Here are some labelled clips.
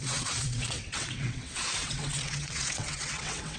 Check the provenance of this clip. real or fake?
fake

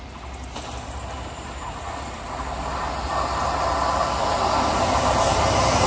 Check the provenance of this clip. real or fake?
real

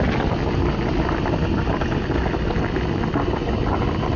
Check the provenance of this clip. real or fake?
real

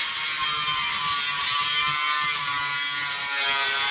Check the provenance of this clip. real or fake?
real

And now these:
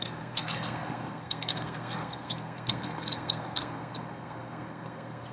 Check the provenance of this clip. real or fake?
fake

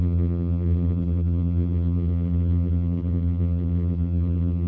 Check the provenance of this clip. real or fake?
fake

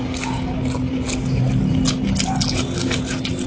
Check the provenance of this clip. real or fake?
real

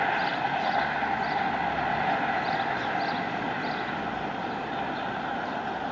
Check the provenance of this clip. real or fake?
real